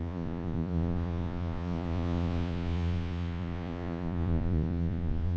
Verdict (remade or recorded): remade